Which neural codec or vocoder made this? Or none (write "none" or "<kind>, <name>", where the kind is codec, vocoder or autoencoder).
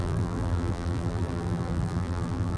vocoder, BigVGAN v2